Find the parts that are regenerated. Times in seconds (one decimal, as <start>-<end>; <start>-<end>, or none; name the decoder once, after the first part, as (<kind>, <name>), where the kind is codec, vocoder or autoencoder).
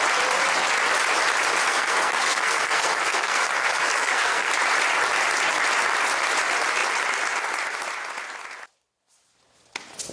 1.6-4.5 (codec, SNAC)